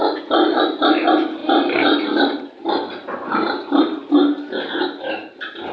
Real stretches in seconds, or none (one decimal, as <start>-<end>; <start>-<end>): 0.0-5.7